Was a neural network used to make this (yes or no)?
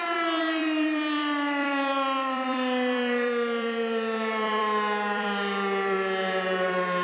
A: yes